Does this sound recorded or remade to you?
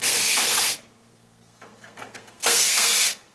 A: remade